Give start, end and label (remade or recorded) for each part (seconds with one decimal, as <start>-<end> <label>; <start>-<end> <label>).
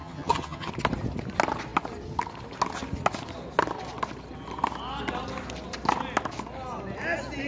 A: 0.0-0.7 remade; 0.7-7.5 recorded